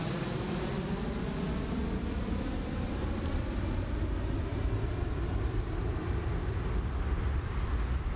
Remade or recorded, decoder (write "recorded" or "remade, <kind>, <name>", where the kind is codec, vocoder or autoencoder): recorded